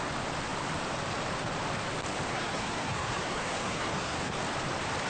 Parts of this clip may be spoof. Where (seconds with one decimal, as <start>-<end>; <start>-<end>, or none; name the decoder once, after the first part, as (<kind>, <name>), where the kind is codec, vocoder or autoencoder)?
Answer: 2.3-4.3 (codec, SNAC)